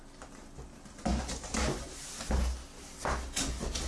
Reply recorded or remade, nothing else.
recorded